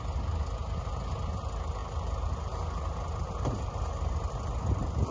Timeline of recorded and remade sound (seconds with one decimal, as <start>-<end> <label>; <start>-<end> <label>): 0.0-5.1 recorded